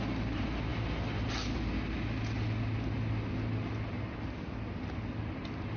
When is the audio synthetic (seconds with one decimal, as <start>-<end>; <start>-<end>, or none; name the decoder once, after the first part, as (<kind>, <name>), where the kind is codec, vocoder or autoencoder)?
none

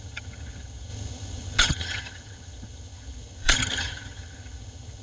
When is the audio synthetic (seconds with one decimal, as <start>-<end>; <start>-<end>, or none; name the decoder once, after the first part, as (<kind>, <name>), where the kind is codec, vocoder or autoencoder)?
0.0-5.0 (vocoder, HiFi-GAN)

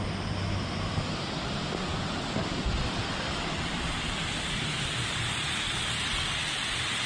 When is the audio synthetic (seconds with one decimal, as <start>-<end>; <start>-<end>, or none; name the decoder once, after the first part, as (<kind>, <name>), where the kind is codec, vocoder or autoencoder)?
1.9-5.2 (vocoder, BigVGAN v2)

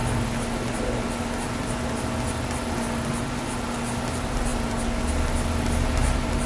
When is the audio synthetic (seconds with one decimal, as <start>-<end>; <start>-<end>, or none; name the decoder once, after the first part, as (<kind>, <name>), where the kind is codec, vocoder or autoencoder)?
none